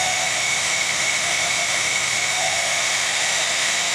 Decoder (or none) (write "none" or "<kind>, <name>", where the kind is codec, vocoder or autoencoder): autoencoder, DAC-VAE